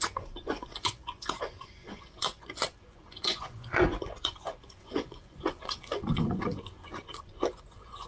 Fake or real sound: fake